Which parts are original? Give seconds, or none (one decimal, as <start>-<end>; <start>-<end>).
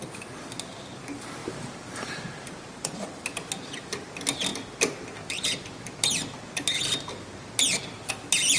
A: 0.0-1.4; 3.1-8.6